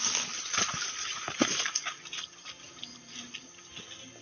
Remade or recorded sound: recorded